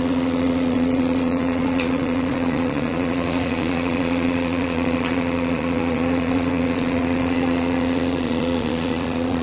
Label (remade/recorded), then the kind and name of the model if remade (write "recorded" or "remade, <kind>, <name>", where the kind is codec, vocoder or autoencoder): remade, vocoder, Vocos